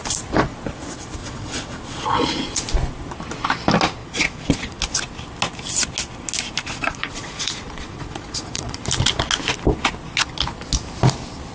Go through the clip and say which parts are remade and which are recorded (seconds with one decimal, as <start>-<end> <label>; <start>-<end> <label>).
0.0-1.2 recorded; 1.2-2.7 remade; 2.7-4.0 recorded; 4.0-4.8 remade; 4.8-6.6 recorded; 6.6-8.8 remade; 8.8-11.5 recorded